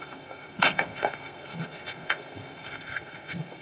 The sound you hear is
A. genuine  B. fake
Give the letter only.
B